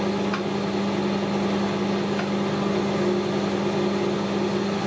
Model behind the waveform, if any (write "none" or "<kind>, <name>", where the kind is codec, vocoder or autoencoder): none